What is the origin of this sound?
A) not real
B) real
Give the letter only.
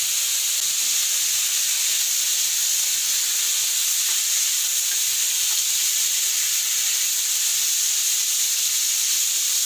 B